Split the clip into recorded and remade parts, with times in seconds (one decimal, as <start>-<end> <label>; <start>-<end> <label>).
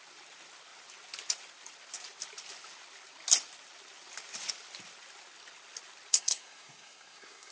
0.0-6.1 recorded; 6.1-7.5 remade